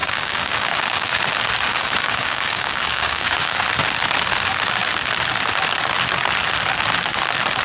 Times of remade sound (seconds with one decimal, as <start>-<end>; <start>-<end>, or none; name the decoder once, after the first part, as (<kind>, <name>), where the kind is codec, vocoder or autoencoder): 0.0-1.2 (codec, DAC); 1.7-3.6